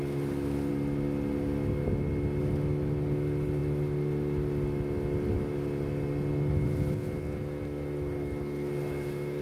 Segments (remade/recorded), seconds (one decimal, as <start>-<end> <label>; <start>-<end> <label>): 0.0-9.4 recorded